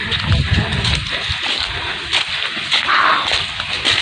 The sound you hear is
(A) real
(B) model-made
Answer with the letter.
A